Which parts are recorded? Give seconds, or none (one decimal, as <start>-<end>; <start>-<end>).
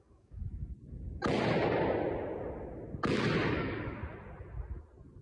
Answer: 0.4-3.5; 4.0-5.2